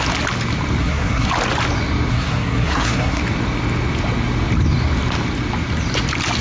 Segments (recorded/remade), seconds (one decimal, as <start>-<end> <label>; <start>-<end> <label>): 0.0-0.8 recorded; 0.8-1.3 remade; 1.3-2.1 recorded; 2.1-3.2 remade; 3.2-6.4 recorded